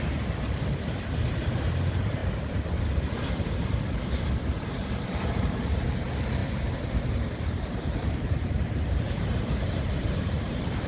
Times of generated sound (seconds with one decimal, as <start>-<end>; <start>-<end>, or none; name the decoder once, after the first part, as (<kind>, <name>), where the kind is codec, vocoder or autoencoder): 0.0-10.9 (vocoder, BigVGAN v2)